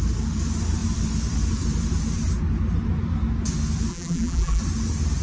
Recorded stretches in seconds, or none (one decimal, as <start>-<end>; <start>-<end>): 0.0-3.9; 4.6-5.2